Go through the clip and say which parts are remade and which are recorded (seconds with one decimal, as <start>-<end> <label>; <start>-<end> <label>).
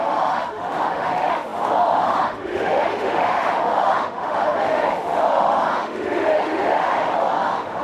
0.0-7.8 remade